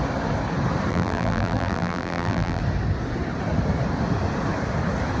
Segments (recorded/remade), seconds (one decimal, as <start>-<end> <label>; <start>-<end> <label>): 0.0-0.9 recorded; 0.9-2.6 remade; 2.6-5.2 recorded